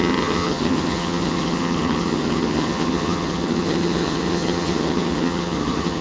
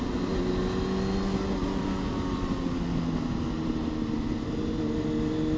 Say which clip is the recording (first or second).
second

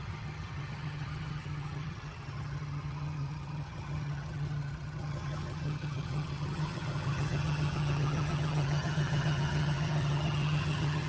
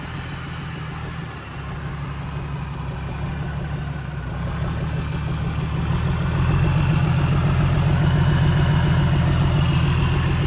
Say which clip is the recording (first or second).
second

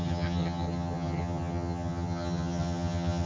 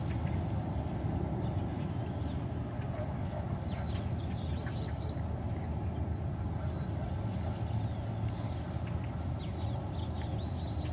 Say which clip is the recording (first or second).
second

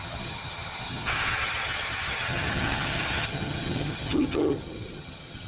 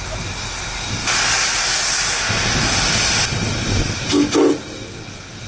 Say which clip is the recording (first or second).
second